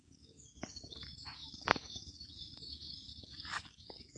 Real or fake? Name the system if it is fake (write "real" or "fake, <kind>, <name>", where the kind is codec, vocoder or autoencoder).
fake, codec, DAC